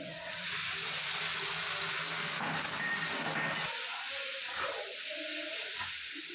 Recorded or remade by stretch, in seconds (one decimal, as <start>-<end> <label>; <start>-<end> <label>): 0.0-0.6 remade; 0.6-4.4 recorded; 4.4-6.3 remade